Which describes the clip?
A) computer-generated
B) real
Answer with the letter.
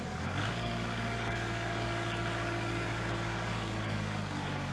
A